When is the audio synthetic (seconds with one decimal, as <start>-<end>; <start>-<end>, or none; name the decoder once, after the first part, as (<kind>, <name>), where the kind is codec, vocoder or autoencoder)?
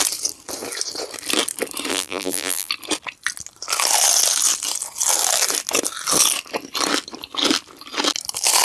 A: 1.9-2.7 (vocoder, BigVGAN v2)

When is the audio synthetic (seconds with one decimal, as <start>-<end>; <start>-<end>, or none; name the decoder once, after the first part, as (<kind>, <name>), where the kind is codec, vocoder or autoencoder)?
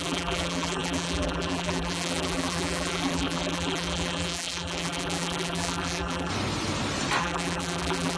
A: 0.0-6.3 (vocoder, BigVGAN v2); 7.2-8.2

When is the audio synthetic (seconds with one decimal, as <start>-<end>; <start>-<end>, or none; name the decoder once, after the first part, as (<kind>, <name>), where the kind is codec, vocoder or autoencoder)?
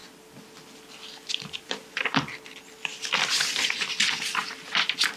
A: 0.0-2.0 (vocoder, BigVGAN v2); 4.4-5.2